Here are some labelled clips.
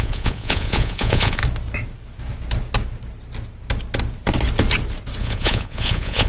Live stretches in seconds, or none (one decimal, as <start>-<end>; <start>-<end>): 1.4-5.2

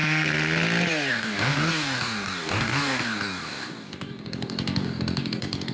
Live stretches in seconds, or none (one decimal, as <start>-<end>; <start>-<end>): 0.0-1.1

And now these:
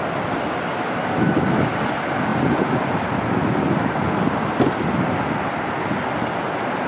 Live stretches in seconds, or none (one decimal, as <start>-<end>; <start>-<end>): 0.0-6.9